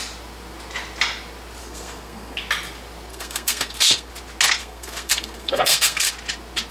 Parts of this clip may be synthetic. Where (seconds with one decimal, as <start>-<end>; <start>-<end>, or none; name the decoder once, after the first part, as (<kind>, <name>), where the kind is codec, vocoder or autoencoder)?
1.6-2.4 (codec, SNAC); 3.1-4.1; 4.6-6.1